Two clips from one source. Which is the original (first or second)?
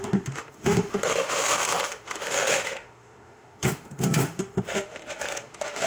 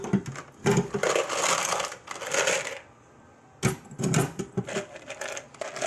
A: second